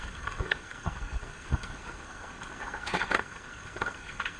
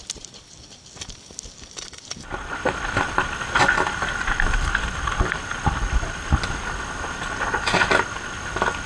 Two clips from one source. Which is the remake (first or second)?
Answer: first